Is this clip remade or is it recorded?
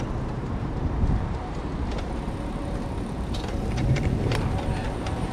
remade